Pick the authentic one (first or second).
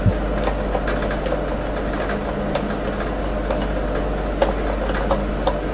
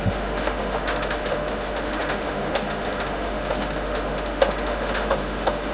first